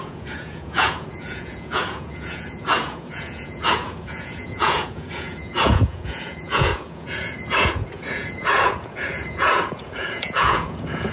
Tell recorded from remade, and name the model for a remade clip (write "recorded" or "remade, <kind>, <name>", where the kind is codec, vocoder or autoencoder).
remade, vocoder, Vocos